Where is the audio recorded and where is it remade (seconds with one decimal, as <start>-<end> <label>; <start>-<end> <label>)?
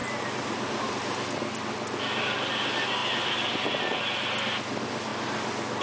0.0-0.8 remade; 0.8-5.8 recorded